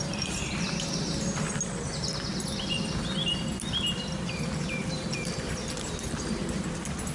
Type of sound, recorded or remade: recorded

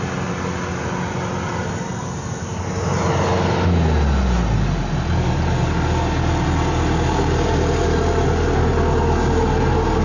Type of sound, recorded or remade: recorded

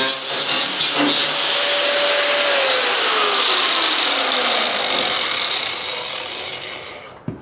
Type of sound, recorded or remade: recorded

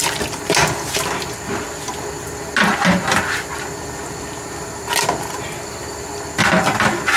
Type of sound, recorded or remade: recorded